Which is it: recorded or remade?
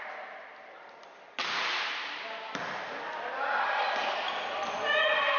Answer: recorded